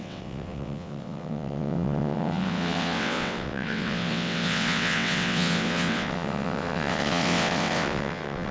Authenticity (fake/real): fake